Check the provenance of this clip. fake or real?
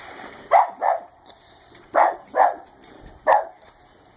fake